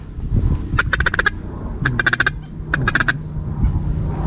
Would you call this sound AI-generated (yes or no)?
no